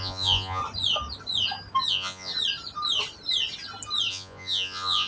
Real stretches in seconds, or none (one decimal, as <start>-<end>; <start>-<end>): 0.6-1.9; 2.3-4.1